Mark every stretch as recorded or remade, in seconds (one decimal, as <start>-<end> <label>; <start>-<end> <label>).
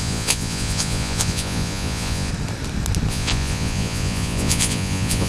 0.0-2.3 remade; 2.3-3.1 recorded; 3.1-5.3 remade